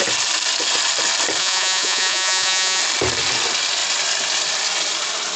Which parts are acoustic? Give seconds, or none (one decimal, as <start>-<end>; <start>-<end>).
0.0-1.4; 2.8-5.4